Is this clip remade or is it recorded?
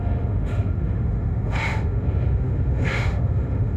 remade